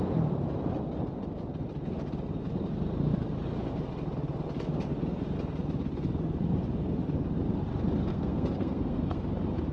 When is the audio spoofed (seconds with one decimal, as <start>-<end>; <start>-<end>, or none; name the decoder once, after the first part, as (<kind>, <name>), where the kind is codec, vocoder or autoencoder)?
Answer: 8.1-9.2 (codec, SNAC)